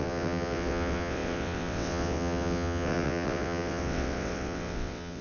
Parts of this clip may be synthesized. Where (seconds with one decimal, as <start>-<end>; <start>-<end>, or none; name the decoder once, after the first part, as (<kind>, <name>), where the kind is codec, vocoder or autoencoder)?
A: 0.0-5.2 (vocoder, WaveNeXt)